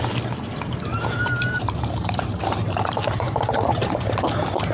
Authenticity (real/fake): fake